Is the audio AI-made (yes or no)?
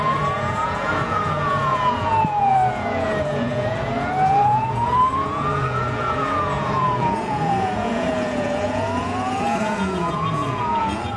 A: yes